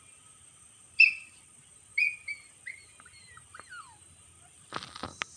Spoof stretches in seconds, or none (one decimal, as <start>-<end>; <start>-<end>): 0.8-1.4